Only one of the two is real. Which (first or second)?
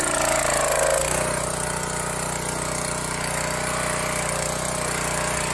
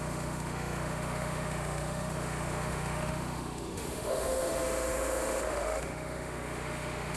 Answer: first